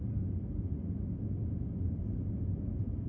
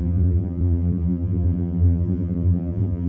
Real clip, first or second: first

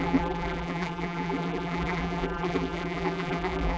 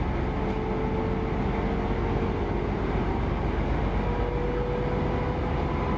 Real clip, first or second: second